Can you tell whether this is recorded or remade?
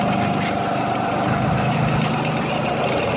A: recorded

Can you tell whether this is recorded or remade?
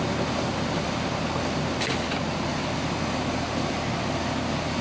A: recorded